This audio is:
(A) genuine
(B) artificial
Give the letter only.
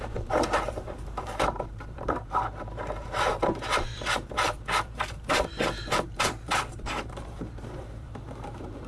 B